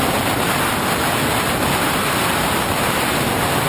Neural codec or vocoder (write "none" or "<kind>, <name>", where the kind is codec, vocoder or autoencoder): none